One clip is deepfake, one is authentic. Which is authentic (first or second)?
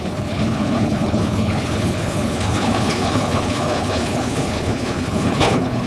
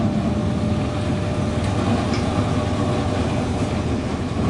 second